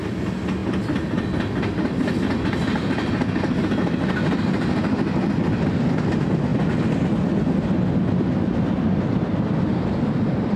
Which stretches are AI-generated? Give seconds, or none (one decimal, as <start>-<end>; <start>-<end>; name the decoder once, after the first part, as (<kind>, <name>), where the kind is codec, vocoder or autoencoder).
none